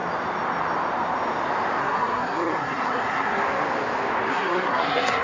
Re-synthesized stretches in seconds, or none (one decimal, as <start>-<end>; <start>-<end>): 1.8-3.4; 4.3-5.2

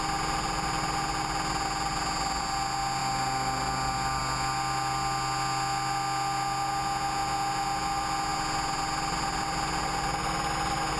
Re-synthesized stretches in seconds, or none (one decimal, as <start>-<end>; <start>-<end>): none